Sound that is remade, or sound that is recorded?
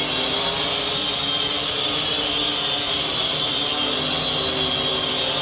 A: recorded